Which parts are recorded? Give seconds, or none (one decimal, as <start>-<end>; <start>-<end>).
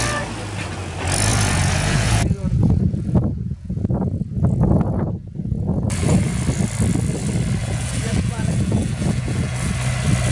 0.0-1.3; 6.4-7.6; 9.7-10.3